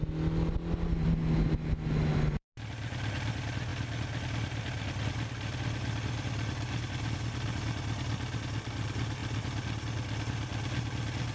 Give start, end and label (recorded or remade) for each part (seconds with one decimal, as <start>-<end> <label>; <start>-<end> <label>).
0.0-11.3 recorded